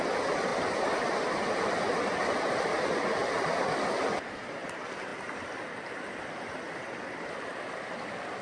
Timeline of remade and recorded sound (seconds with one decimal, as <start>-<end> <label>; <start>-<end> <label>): 0.0-8.4 recorded